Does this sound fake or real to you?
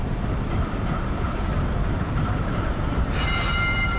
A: fake